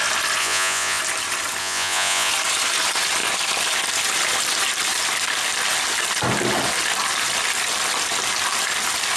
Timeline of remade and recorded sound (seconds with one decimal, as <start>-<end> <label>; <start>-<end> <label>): 0.0-0.4 recorded; 0.4-1.0 remade; 1.0-1.6 recorded; 1.6-2.3 remade; 2.3-9.2 recorded